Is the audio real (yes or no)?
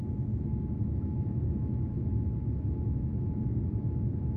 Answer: no